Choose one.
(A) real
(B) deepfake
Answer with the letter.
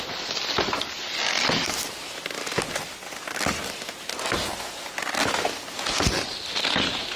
A